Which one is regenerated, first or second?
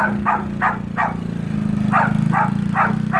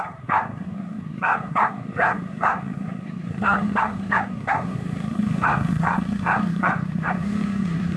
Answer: second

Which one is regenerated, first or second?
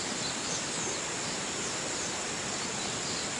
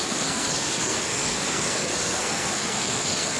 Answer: second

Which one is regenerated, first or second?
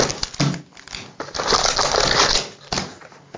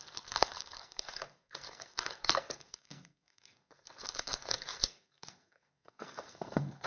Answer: second